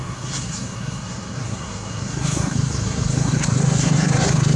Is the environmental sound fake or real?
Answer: fake